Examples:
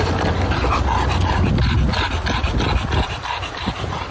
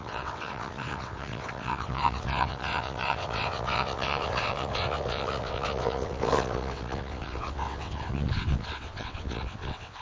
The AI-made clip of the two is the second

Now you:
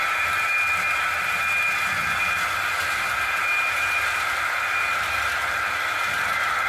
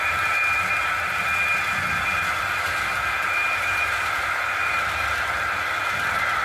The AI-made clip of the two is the second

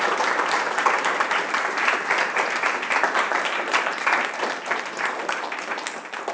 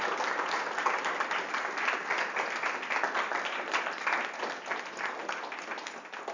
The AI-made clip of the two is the first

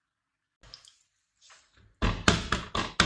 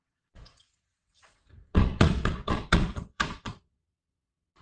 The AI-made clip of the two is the second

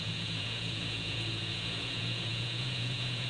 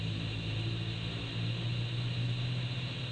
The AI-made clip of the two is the first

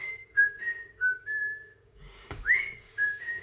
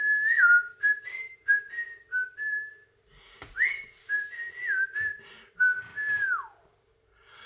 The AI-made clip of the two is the first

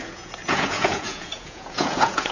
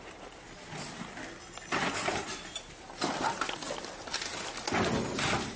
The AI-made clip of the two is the first